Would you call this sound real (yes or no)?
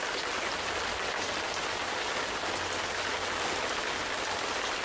yes